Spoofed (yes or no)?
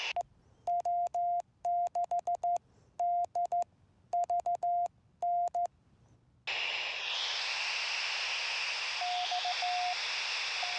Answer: no